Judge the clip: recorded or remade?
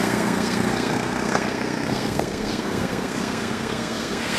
remade